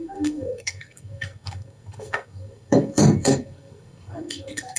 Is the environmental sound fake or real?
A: fake